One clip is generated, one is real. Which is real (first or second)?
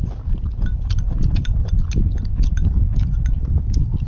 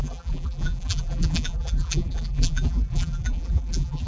first